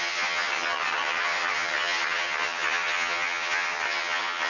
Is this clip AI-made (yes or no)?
yes